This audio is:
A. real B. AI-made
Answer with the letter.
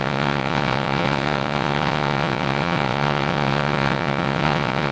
B